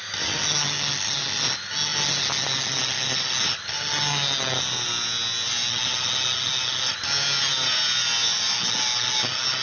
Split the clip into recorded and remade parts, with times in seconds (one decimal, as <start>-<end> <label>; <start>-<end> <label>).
0.0-9.6 recorded